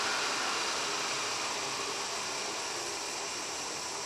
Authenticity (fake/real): real